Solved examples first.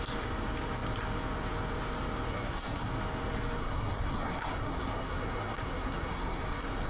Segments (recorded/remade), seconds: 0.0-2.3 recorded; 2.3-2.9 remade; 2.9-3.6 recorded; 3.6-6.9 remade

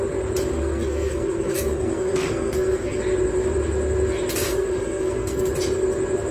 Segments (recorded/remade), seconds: 0.0-0.5 recorded; 0.5-3.0 remade; 3.0-4.5 recorded; 4.5-5.5 remade; 5.5-6.3 recorded

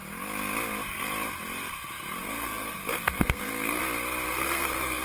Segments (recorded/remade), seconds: 0.0-2.2 recorded; 2.2-3.8 remade; 3.8-4.3 recorded; 4.3-5.0 remade

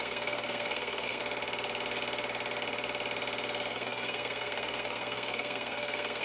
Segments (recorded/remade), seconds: 0.0-1.2 remade; 1.2-3.7 recorded; 3.7-6.2 remade

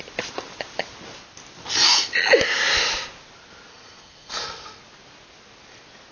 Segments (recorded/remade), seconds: 0.0-3.7 recorded; 3.7-4.8 remade; 4.8-6.1 recorded

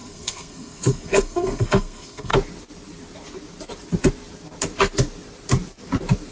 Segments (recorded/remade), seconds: 0.0-2.3 remade; 2.3-6.3 recorded

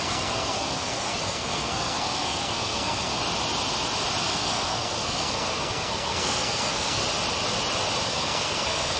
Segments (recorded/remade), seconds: 0.0-3.1 remade; 3.1-4.2 recorded; 4.2-7.0 remade; 7.0-8.1 recorded; 8.1-9.0 remade